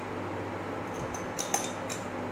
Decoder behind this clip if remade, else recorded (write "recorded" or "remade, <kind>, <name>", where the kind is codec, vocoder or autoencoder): recorded